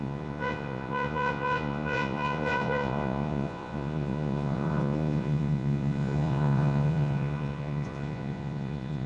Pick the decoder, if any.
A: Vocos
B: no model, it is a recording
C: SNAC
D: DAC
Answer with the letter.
A